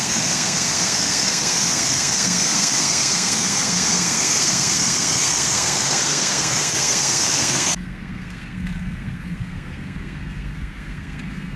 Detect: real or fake fake